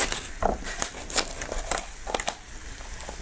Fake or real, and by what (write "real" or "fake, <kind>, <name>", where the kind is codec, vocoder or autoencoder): real